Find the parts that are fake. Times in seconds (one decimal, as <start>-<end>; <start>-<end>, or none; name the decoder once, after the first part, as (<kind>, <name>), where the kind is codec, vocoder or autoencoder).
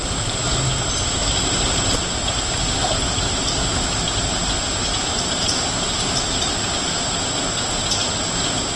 2.0-7.1 (vocoder, BigVGAN v2)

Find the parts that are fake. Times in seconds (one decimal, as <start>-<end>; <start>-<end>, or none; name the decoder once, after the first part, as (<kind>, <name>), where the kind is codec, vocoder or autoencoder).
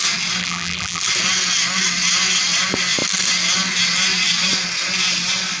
0.4-1.0 (vocoder, BigVGAN v2)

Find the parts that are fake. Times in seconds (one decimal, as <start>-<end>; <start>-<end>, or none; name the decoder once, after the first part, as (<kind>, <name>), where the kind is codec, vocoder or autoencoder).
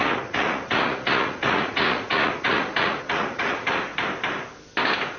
0.0-3.9 (vocoder, Vocos)